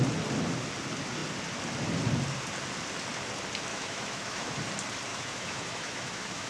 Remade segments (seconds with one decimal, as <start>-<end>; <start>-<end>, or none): 3.7-4.6; 5.1-6.5